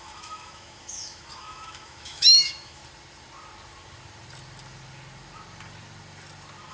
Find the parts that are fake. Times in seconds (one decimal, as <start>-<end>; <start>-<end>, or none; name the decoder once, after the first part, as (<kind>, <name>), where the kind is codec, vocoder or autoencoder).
0.0-2.8 (autoencoder, DAC-VAE)